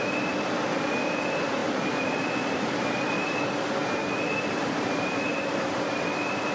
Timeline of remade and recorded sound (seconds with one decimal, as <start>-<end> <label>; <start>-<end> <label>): 0.0-6.5 recorded